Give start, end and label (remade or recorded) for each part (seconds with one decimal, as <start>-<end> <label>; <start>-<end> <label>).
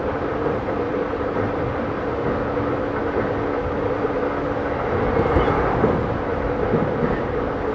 0.0-1.5 remade; 1.5-3.6 recorded; 3.6-4.2 remade; 4.2-7.7 recorded